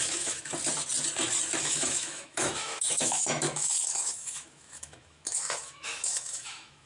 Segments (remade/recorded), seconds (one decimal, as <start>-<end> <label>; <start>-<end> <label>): 0.0-0.5 remade; 0.5-1.6 recorded; 1.6-6.9 remade